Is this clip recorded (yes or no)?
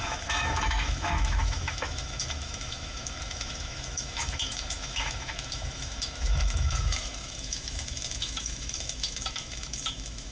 no